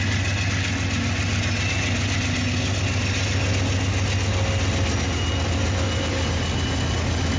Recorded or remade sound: recorded